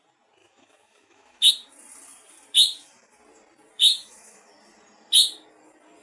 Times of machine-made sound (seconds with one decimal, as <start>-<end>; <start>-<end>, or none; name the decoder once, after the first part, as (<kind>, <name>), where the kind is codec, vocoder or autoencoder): 0.4-1.5 (autoencoder, DAC-VAE); 3.8-4.5